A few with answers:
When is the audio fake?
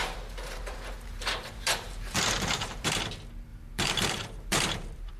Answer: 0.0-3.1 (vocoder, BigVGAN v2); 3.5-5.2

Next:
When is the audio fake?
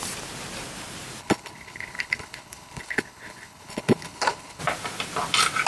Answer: 1.2-4.6 (codec, HILCodec)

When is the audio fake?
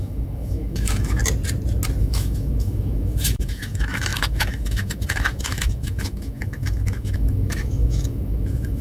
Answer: 0.0-1.2 (autoencoder, DAC-VAE); 2.0-8.8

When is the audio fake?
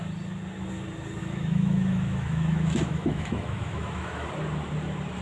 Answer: 1.2-4.3 (autoencoder, DAC-VAE)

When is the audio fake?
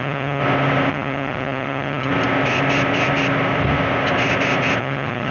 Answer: 0.0-0.4 (vocoder, HiFi-GAN); 0.9-2.1; 4.8-5.3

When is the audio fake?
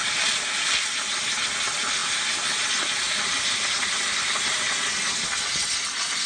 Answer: none